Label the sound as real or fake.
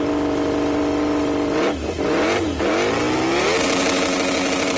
real